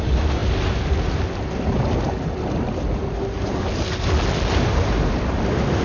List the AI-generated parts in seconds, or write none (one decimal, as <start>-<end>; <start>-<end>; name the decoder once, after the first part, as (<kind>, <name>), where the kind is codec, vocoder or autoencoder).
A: none